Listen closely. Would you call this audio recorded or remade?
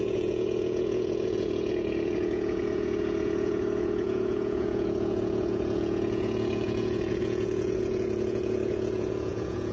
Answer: remade